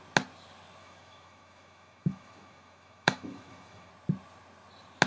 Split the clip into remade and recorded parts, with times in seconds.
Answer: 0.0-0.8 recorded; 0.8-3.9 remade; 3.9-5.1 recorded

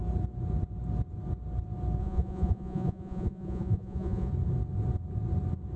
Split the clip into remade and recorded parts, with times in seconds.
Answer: 0.0-2.0 recorded; 2.0-4.3 remade; 4.3-5.8 recorded

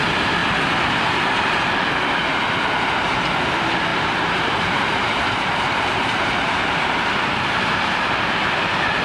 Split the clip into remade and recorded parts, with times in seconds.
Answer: 0.0-3.9 recorded; 3.9-8.2 remade; 8.2-9.0 recorded

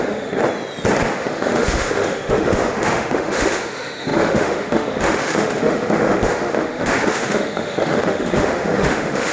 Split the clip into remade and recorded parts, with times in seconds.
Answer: 0.0-0.4 remade; 0.4-1.2 recorded; 1.2-9.3 remade

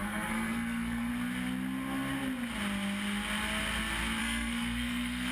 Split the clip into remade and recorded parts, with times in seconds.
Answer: 0.0-1.1 remade; 1.1-4.2 recorded; 4.2-5.3 remade

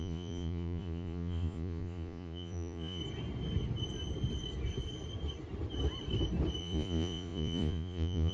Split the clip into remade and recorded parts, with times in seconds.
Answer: 0.0-3.0 remade; 3.0-6.6 recorded; 6.6-8.3 remade